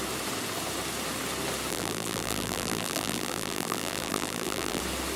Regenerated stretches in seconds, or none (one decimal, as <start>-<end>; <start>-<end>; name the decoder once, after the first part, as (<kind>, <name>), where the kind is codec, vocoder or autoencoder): 1.7-4.8 (vocoder, BigVGAN v2)

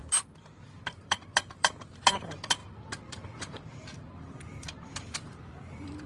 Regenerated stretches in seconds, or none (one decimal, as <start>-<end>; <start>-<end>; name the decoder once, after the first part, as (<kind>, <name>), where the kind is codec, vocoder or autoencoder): 0.5-6.1 (vocoder, BigVGAN v2)

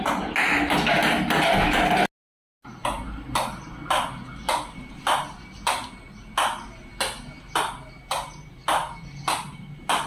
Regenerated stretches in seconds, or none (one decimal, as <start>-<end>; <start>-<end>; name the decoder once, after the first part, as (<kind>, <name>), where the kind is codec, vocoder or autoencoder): none

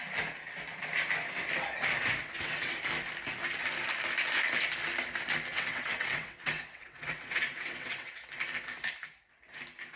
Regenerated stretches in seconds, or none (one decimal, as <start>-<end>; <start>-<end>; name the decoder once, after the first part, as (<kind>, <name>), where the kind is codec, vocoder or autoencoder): 2.2-2.8 (vocoder, WaveNeXt); 5.5-8.2

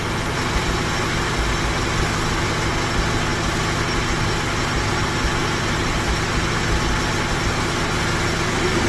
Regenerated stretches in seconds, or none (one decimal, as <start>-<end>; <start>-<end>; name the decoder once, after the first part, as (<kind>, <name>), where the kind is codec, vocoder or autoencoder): none